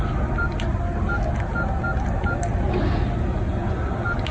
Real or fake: real